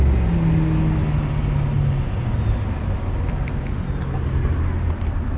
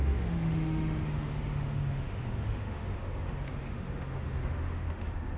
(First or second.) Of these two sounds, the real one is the first